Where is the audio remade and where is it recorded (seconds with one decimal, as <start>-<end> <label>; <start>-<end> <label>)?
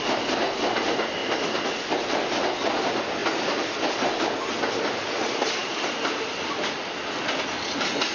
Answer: 0.0-8.1 recorded